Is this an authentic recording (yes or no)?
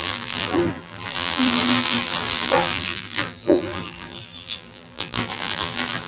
no